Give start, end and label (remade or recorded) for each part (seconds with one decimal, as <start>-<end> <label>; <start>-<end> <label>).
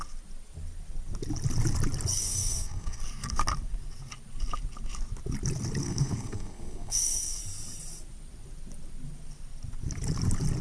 0.0-2.2 recorded; 2.2-3.0 remade; 3.0-5.8 recorded; 5.8-7.4 remade; 7.4-10.6 recorded